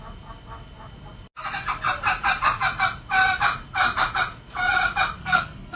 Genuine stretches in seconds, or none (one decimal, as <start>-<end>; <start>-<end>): 0.0-5.2